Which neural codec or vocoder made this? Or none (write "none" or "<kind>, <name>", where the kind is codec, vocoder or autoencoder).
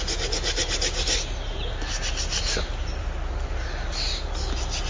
none